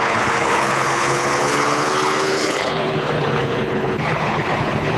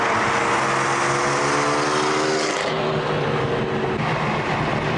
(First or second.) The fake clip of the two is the first